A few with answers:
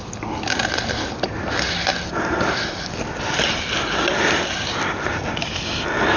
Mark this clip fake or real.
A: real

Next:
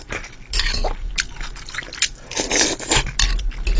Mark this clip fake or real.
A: real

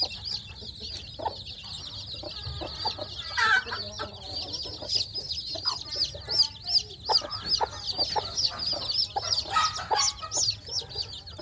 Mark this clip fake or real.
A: real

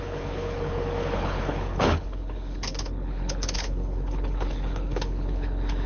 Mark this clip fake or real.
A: fake